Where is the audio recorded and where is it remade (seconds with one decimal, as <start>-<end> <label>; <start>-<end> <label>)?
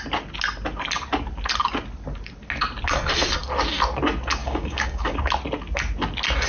0.0-4.4 recorded; 4.4-5.2 remade; 5.2-6.5 recorded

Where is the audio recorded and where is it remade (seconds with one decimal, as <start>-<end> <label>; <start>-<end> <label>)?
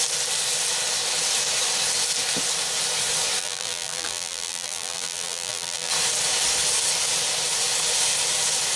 0.0-3.4 recorded; 3.4-5.9 remade; 5.9-8.8 recorded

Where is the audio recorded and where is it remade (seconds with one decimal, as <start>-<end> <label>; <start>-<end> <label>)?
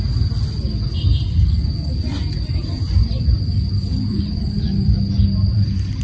0.0-3.9 recorded; 3.9-5.0 remade; 5.0-6.0 recorded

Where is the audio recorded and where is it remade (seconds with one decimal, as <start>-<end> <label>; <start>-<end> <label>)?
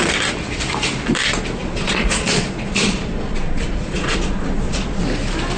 0.0-1.6 recorded; 1.6-5.0 remade; 5.0-5.6 recorded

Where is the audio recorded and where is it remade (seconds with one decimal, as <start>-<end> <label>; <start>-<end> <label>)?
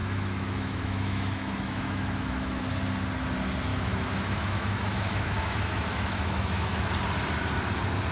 0.0-2.6 remade; 2.6-3.7 recorded; 3.7-6.9 remade; 6.9-8.1 recorded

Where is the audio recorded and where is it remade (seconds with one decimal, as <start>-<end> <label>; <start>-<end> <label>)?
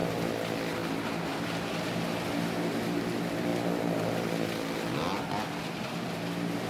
0.0-6.7 recorded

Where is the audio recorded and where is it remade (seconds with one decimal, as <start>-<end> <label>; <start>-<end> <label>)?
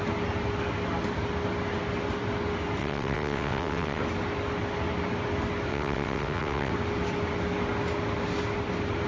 0.0-2.8 recorded; 2.8-4.0 remade; 4.0-5.7 recorded; 5.7-6.7 remade; 6.7-9.1 recorded